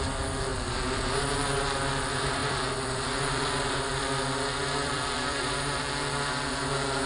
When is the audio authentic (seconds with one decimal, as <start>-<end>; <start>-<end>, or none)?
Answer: 0.0-0.5; 1.2-2.4; 5.8-7.1